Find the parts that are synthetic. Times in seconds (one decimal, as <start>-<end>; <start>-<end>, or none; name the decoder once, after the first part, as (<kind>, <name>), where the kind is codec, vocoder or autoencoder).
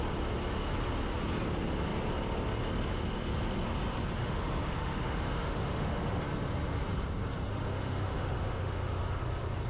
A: 4.2-6.2 (autoencoder, DAC-VAE); 7.5-9.2